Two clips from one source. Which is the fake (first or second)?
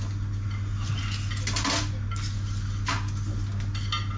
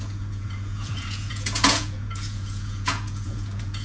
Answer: second